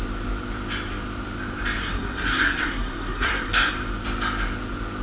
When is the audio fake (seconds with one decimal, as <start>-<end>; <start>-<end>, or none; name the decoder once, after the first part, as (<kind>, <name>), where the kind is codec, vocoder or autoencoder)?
1.8-3.7 (codec, SNAC)